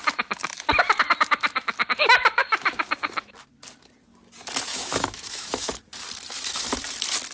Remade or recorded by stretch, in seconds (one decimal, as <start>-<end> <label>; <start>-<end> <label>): 0.0-2.4 recorded; 2.4-3.0 remade; 3.0-4.7 recorded; 4.7-5.8 remade; 5.8-7.3 recorded